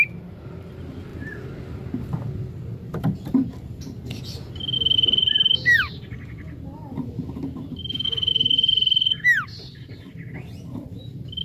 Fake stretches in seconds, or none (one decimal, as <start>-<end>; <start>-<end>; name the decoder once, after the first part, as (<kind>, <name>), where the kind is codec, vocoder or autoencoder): 5.2-6.1 (vocoder, BigVGAN v2)